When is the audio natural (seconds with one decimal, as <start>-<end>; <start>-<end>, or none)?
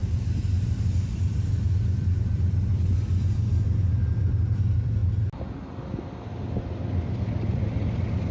5.0-7.0